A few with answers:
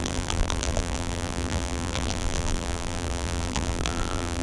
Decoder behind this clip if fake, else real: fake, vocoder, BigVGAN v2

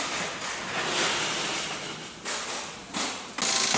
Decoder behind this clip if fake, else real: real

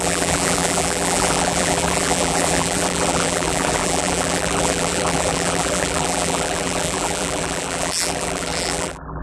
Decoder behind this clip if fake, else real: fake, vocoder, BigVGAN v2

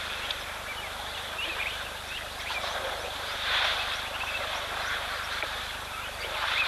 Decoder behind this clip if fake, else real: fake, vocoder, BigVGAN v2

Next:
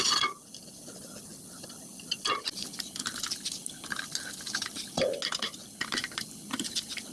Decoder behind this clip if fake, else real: real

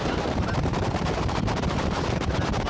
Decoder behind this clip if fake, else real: fake, vocoder, BigVGAN v2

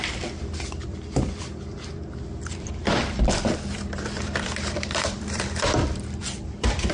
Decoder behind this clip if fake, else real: fake, vocoder, BigVGAN v2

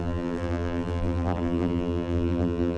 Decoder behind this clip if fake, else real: fake, vocoder, BigVGAN v2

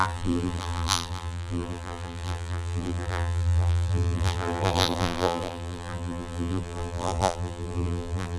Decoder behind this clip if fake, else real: fake, vocoder, BigVGAN v2